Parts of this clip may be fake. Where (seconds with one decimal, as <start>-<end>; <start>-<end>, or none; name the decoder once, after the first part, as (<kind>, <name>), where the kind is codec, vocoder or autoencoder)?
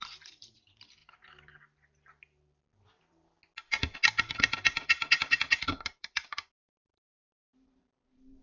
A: 0.0-1.0 (vocoder, BigVGAN v2); 5.6-8.4